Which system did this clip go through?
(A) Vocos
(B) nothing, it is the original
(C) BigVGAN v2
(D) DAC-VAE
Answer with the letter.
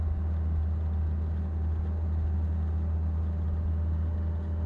B